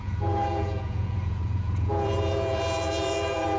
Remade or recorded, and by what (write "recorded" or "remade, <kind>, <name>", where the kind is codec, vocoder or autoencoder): remade, vocoder, Vocos